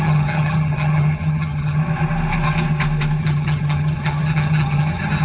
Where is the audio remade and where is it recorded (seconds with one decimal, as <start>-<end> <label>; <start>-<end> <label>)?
0.0-1.8 remade; 1.8-3.2 recorded; 3.2-5.2 remade